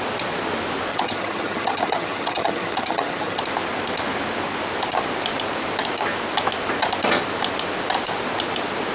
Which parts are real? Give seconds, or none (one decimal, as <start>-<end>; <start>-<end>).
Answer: 0.0-0.9; 3.4-8.9